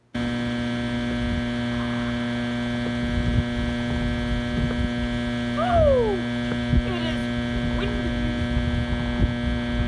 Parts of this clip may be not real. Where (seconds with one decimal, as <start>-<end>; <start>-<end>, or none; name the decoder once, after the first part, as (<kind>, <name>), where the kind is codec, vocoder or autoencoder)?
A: none